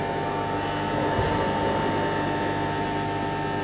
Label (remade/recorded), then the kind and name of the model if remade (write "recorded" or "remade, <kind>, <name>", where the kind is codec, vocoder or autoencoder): recorded